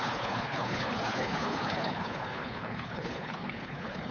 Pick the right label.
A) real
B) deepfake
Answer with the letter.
B